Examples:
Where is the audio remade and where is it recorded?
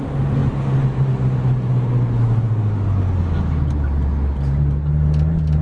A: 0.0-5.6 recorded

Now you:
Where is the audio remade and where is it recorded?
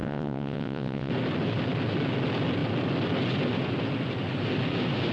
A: 0.0-1.1 remade; 1.1-5.1 recorded